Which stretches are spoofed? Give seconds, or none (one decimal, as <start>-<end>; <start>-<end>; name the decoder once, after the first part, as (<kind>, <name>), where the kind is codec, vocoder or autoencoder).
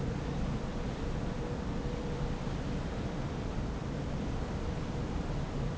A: 0.0-3.6 (vocoder, BigVGAN v2); 4.2-5.8